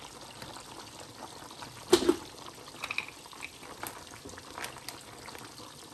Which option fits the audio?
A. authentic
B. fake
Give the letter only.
A